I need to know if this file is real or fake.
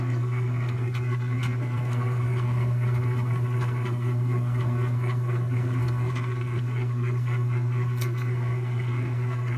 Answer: fake